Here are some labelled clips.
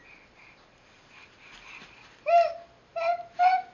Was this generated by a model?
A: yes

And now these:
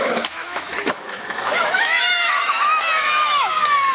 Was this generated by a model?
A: yes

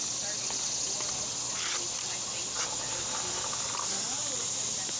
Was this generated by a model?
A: no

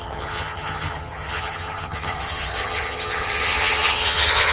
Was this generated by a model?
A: yes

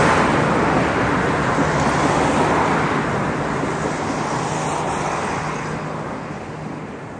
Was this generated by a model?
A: no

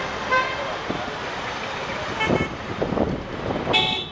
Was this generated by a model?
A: no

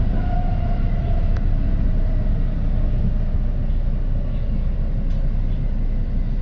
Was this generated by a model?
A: no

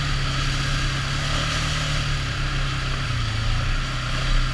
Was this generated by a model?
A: no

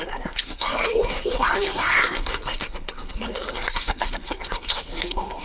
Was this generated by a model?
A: yes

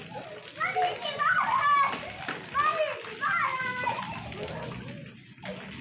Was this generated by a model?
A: no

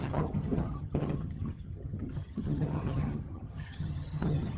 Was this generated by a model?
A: yes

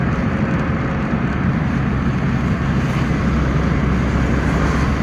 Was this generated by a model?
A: no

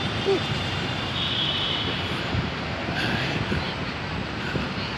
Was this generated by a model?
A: yes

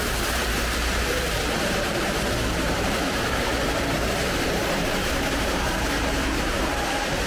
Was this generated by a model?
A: yes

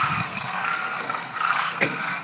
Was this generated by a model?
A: yes